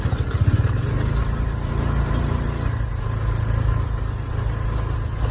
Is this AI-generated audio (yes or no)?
no